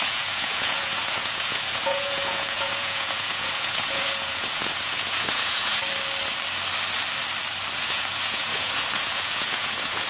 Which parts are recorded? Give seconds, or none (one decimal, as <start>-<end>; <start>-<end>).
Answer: 5.8-7.8